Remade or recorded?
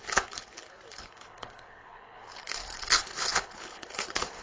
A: remade